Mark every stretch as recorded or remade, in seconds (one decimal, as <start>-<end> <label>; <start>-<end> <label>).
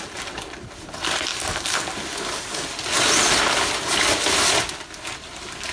0.0-5.7 recorded